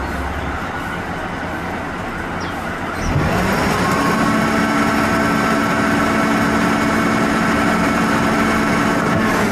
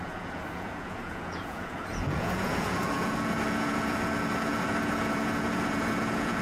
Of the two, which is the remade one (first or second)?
second